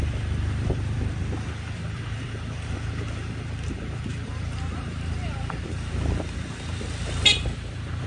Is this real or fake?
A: fake